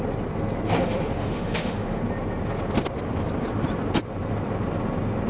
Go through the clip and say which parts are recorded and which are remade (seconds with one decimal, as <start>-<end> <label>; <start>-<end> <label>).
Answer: 0.0-1.2 recorded; 1.2-2.0 remade; 2.0-5.3 recorded

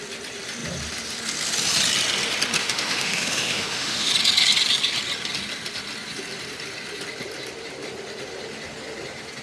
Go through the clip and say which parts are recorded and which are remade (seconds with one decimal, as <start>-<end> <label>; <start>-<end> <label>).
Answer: 0.0-2.6 recorded; 2.6-4.1 remade; 4.1-9.4 recorded

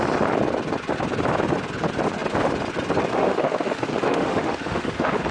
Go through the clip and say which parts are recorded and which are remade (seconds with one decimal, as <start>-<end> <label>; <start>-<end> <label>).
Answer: 0.0-3.1 recorded; 3.1-5.3 remade